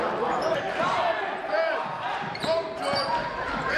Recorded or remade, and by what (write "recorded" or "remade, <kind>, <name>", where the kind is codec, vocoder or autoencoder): remade, vocoder, BigVGAN v2